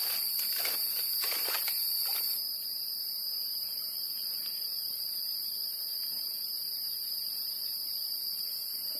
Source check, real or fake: real